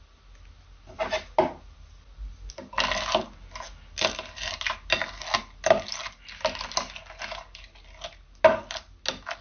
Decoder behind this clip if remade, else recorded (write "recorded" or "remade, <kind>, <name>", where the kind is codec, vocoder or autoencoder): recorded